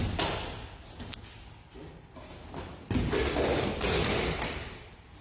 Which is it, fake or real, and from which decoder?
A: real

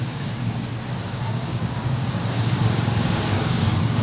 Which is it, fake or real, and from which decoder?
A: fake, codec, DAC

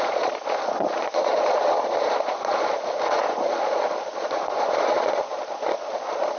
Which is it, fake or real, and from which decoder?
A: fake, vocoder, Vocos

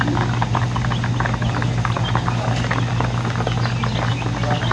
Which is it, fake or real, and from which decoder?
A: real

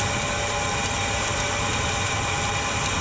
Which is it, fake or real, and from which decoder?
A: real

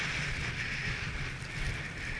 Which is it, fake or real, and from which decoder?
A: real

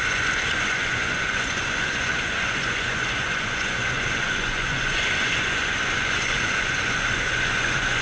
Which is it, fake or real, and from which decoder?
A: fake, vocoder, Vocos